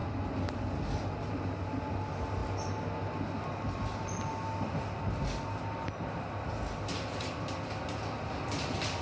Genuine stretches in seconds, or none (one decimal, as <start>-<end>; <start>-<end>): 0.0-9.0